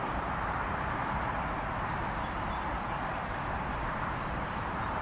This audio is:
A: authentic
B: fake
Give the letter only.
B